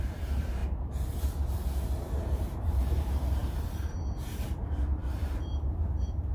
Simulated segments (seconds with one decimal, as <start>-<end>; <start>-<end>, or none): 0.0-0.6; 2.6-6.3